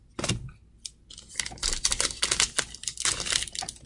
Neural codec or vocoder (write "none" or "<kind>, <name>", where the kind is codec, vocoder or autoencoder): none